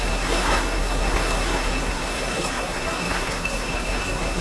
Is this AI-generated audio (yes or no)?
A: yes